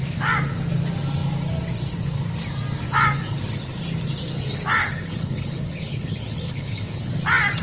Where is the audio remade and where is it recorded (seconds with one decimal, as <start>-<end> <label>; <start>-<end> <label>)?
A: 0.0-4.8 recorded; 4.8-7.1 remade; 7.1-7.6 recorded